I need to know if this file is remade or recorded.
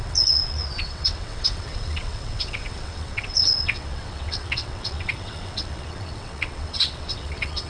remade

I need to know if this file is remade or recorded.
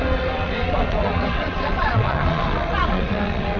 remade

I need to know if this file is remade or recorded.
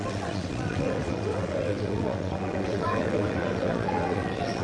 remade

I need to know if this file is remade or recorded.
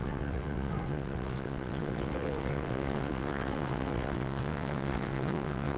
remade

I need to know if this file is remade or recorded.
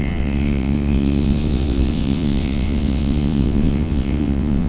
remade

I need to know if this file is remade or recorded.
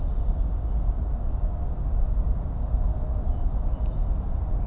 recorded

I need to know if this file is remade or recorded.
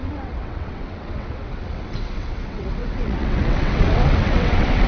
remade